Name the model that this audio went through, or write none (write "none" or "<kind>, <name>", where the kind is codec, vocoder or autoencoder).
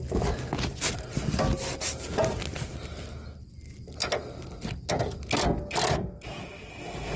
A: none